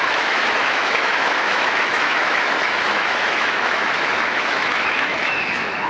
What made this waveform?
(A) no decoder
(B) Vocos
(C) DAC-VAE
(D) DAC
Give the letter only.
C